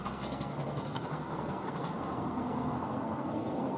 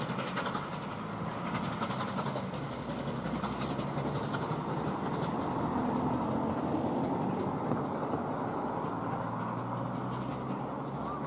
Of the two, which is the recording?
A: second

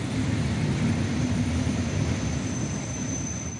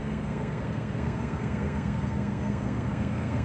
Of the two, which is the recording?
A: first